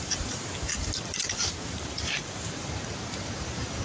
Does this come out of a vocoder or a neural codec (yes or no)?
yes